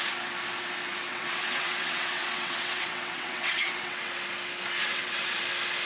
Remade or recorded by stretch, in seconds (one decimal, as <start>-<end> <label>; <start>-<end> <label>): 0.0-1.1 recorded; 1.1-4.1 remade; 4.1-4.8 recorded; 4.8-5.4 remade; 5.4-5.9 recorded